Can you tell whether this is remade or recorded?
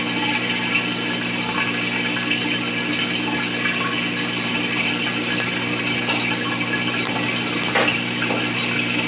recorded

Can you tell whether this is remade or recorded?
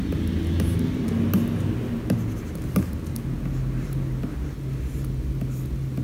recorded